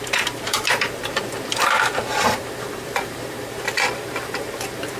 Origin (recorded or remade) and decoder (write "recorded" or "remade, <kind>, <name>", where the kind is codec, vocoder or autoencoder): remade, vocoder, BigVGAN v2